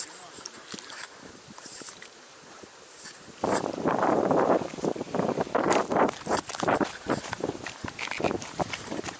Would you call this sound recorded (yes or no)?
no